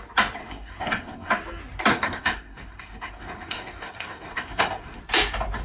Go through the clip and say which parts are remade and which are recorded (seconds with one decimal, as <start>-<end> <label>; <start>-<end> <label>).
0.0-0.4 recorded; 0.4-1.3 remade; 1.3-1.9 recorded; 1.9-5.0 remade; 5.0-5.6 recorded